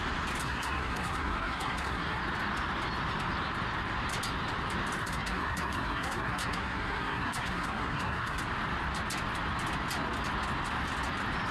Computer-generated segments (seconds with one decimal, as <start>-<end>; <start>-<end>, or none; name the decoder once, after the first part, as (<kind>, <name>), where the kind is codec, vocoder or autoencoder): 0.4-2.2 (codec, SNAC); 5.0-8.4